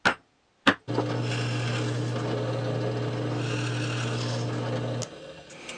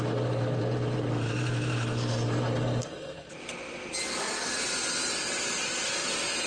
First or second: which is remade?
second